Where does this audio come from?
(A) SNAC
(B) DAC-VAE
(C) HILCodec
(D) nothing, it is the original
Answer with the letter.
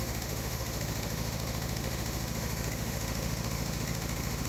B